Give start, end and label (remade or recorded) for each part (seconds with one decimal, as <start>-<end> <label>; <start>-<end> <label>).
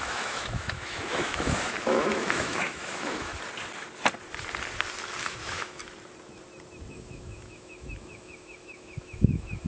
0.0-3.3 remade; 3.3-5.2 recorded; 5.2-5.8 remade; 5.8-6.9 recorded; 6.9-9.7 remade